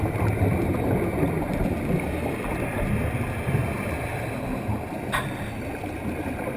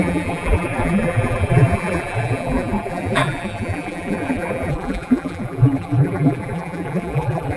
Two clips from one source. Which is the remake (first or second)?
second